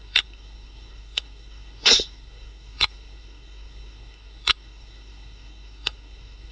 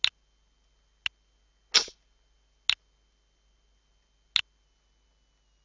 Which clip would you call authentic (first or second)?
second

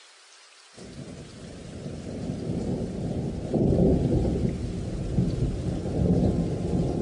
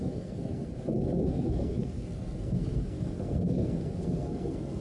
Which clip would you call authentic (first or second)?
first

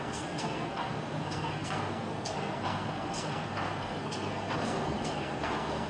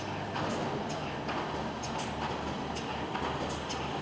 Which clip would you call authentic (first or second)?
second